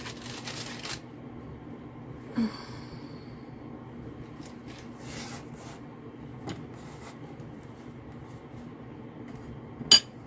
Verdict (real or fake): real